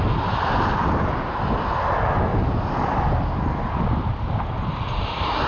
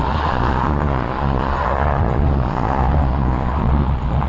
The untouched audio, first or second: first